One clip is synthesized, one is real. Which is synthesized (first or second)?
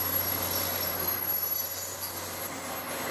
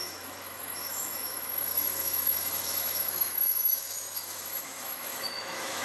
second